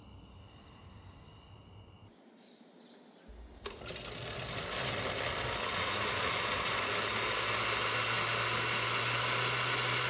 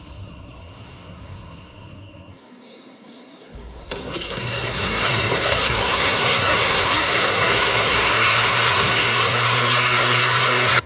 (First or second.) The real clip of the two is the first